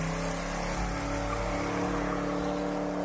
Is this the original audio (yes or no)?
yes